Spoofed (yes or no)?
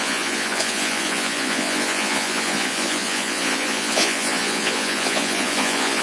yes